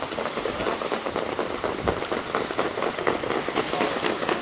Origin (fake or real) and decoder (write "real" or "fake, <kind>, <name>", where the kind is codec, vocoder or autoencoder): real